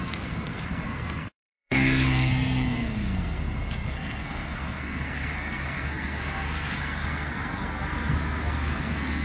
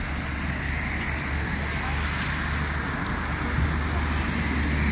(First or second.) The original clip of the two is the second